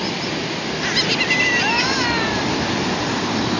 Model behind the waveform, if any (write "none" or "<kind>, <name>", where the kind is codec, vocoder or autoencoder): none